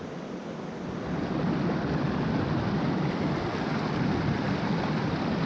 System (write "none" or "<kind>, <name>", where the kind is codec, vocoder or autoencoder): none